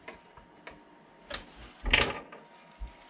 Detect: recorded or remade recorded